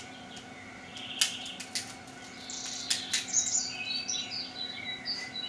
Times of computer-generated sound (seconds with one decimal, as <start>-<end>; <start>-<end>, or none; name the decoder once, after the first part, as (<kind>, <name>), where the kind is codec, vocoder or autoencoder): none